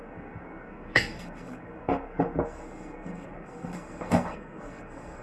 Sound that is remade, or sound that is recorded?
remade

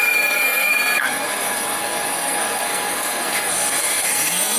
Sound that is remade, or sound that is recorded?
remade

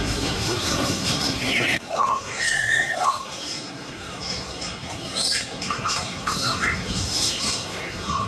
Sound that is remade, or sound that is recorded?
remade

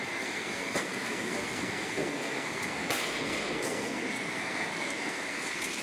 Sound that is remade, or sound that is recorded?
remade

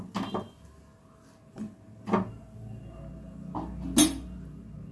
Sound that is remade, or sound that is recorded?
recorded